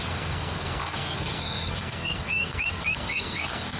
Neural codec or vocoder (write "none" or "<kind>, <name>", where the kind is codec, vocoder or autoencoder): codec, SNAC